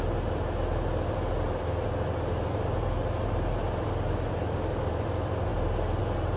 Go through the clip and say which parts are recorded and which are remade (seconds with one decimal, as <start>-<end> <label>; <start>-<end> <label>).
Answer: 0.0-6.4 recorded